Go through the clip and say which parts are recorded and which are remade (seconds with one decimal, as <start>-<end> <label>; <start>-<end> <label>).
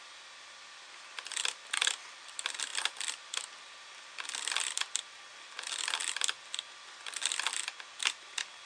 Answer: 0.0-8.7 recorded